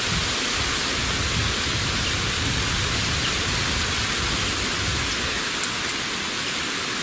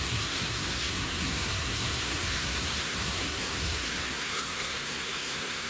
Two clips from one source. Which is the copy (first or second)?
second